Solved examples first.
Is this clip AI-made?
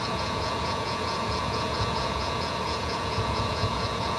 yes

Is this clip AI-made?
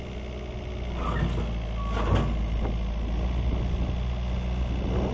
no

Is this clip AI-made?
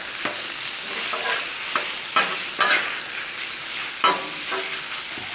no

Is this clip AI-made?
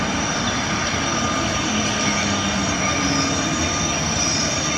no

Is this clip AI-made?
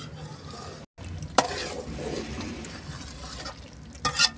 no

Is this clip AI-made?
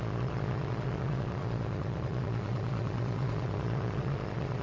yes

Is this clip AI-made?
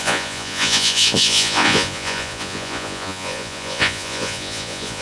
yes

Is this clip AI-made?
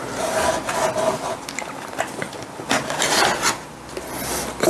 no